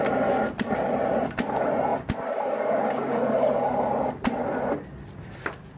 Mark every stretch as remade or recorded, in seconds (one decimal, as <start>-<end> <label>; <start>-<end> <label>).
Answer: 0.0-5.8 recorded